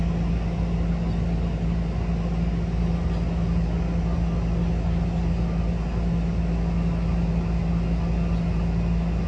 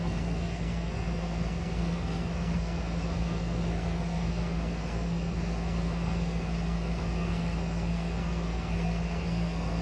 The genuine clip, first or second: first